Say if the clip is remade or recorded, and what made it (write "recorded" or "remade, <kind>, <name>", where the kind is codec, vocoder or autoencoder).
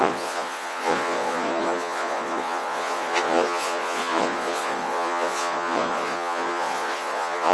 remade, vocoder, Vocos